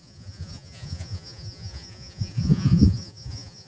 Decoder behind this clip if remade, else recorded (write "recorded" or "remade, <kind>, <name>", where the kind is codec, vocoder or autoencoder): remade, vocoder, Vocos